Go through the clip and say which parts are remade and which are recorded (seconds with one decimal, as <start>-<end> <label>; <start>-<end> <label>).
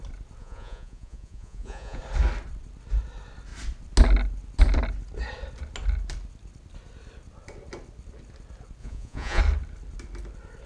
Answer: 0.0-0.4 recorded; 0.4-2.0 remade; 2.0-8.8 recorded; 8.8-9.4 remade; 9.4-10.7 recorded